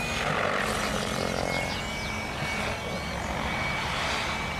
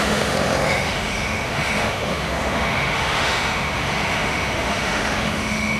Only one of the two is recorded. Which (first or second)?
first